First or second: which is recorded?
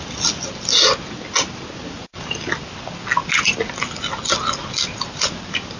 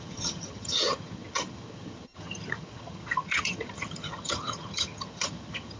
first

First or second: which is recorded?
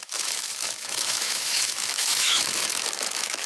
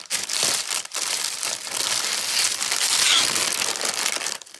second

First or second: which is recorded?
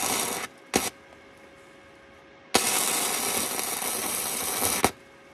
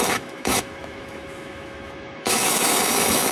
first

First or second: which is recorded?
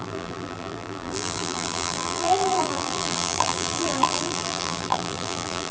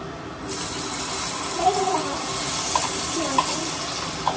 second